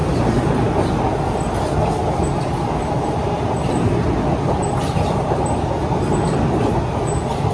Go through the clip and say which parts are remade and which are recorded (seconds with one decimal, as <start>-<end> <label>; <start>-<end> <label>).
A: 0.0-7.5 recorded